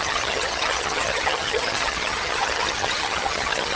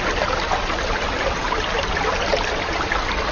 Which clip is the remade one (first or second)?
first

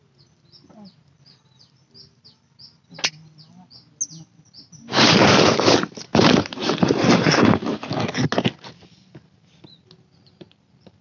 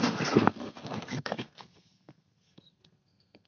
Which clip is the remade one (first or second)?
second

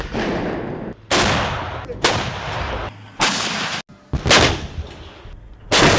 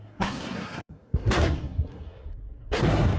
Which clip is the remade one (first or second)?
second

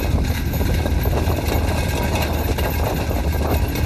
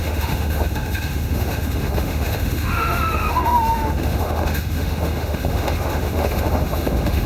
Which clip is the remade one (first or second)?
second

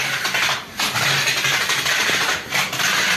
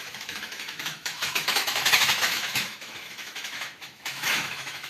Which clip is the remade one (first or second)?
second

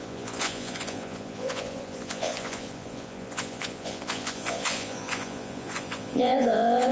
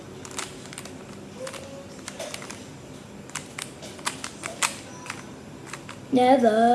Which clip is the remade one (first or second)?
first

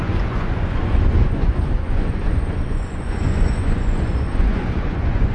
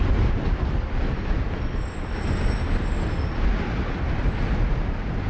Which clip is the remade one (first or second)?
first